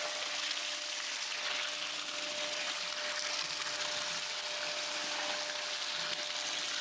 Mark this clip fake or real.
real